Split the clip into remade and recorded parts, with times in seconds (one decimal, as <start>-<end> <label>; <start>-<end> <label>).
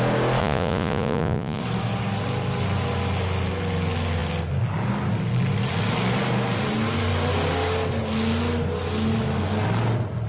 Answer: 0.0-0.4 recorded; 0.4-1.6 remade; 1.6-10.3 recorded